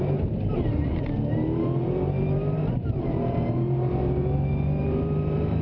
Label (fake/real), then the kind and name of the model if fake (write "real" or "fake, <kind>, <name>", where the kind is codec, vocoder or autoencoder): fake, vocoder, BigVGAN v2